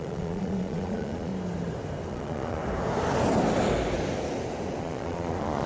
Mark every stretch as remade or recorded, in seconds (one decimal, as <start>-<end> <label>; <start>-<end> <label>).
0.0-1.3 remade; 1.3-2.1 recorded; 2.1-2.6 remade; 2.6-4.8 recorded; 4.8-5.7 remade